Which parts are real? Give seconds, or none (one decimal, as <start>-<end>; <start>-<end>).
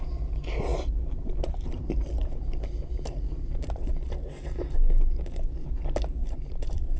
0.0-0.7; 3.9-6.2